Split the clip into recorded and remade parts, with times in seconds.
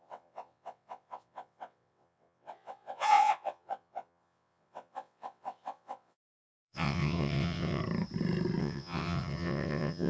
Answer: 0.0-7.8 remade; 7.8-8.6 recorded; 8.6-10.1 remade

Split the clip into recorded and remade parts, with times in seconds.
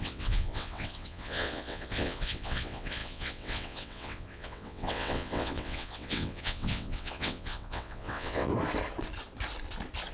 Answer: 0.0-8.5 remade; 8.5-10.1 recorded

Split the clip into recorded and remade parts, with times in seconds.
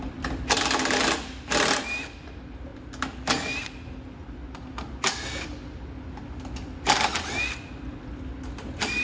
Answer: 0.0-9.0 recorded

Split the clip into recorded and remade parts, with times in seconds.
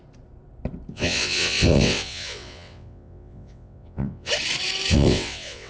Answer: 0.0-0.9 recorded; 0.9-4.3 remade; 4.3-4.9 recorded; 4.9-5.7 remade